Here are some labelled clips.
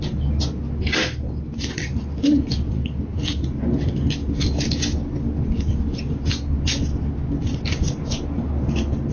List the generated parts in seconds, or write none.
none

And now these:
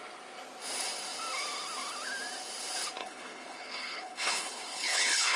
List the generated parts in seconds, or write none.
3.0-5.4